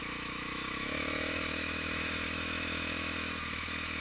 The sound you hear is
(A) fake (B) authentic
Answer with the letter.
A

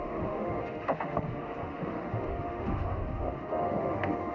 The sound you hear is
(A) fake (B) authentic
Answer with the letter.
A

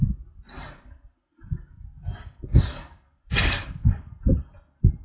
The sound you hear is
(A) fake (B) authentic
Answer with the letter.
B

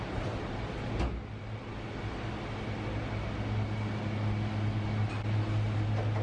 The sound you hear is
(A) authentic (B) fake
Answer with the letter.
A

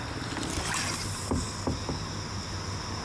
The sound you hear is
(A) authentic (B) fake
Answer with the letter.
A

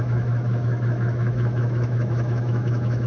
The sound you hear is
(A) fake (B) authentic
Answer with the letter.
A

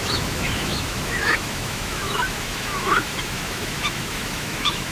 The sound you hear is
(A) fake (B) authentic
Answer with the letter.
A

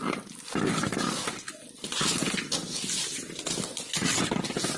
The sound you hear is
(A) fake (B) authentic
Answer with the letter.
B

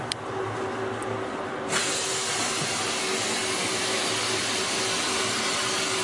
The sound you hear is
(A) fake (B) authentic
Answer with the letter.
B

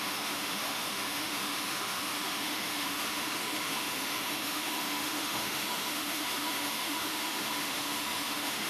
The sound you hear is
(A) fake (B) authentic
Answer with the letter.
A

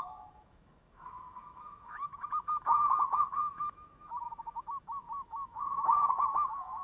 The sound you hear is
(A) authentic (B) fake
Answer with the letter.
B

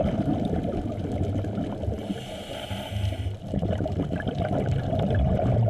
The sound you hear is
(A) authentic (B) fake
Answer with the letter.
A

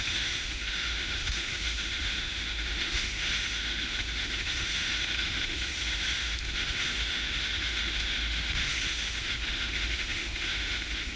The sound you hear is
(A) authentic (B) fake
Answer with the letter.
B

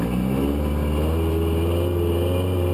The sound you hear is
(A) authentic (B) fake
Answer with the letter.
A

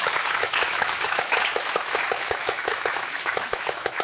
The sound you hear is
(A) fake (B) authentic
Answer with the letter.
A